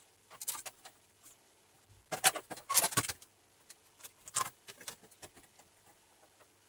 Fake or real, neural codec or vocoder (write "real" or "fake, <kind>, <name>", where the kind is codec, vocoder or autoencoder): real